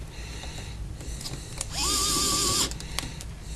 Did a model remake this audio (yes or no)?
no